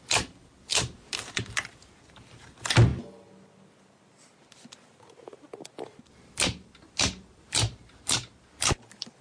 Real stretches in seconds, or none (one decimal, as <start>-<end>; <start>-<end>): 0.0-9.2